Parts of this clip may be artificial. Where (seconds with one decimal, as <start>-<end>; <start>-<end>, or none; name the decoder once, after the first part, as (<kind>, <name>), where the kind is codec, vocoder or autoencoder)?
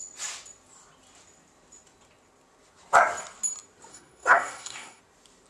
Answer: 3.9-5.0 (codec, SNAC)